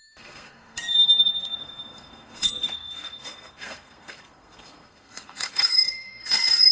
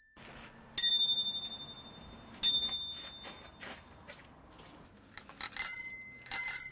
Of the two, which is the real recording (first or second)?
second